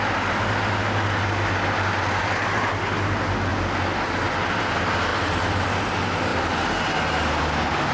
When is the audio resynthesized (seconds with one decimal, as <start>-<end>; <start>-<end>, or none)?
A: none